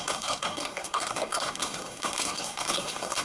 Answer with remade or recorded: remade